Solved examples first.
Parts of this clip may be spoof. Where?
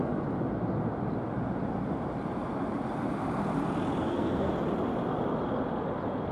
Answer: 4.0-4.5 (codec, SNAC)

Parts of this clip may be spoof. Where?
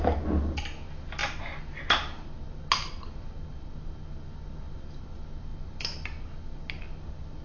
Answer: none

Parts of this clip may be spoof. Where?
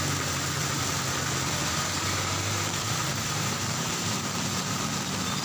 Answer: 1.6-4.8 (vocoder, BigVGAN v2)